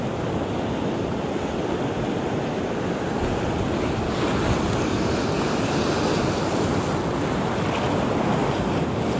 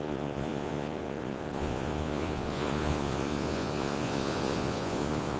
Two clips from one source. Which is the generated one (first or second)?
second